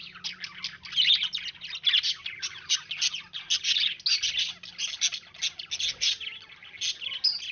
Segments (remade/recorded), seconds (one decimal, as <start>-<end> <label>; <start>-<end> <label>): 0.0-7.5 recorded